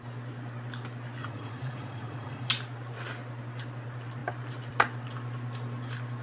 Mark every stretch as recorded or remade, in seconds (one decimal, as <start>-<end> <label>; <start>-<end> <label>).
0.0-1.2 recorded; 1.2-2.5 remade; 2.5-6.2 recorded